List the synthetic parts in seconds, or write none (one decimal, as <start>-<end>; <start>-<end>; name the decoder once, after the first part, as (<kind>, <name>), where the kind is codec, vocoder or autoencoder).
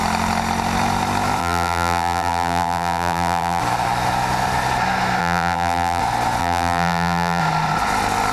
1.4-3.6 (vocoder, BigVGAN v2); 5.2-6.0; 6.4-7.4